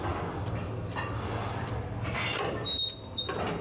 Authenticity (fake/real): real